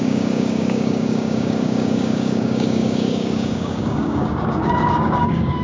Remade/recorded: remade